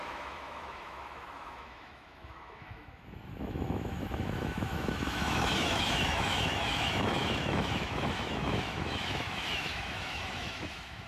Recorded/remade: remade